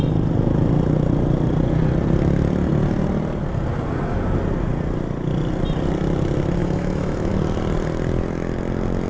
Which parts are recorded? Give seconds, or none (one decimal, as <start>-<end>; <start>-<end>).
0.0-6.6; 7.3-9.1